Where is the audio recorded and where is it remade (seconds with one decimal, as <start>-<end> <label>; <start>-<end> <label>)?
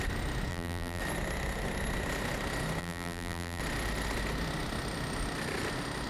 0.0-0.5 recorded; 0.5-1.0 remade; 1.0-2.8 recorded; 2.8-3.6 remade; 3.6-6.1 recorded